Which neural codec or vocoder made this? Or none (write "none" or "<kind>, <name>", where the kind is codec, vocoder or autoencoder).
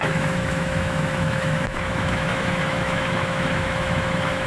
autoencoder, DAC-VAE